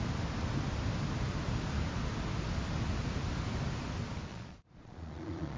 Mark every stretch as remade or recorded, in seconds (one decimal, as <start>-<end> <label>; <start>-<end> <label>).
0.0-4.3 recorded; 4.3-5.6 remade